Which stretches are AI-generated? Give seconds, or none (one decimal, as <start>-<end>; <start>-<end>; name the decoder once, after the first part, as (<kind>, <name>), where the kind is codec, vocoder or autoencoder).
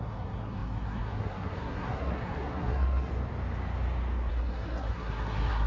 0.0-3.1 (codec, SNAC); 4.3-5.7